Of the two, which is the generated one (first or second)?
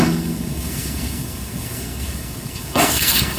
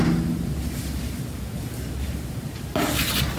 first